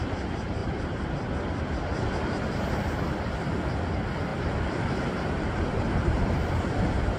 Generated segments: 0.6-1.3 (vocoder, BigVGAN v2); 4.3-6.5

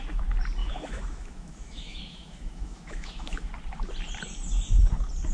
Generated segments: 0.6-3.5 (autoencoder, DAC-VAE)